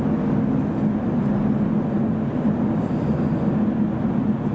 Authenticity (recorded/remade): recorded